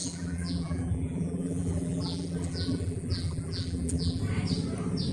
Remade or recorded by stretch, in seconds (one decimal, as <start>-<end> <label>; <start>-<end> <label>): 0.0-4.2 remade; 4.2-5.1 recorded